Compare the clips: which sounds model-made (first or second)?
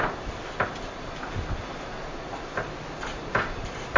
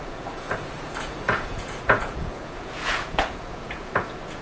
second